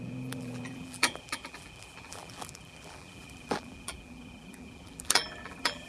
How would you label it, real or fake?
fake